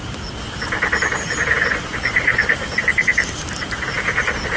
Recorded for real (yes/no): yes